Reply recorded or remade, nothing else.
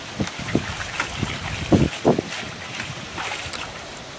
recorded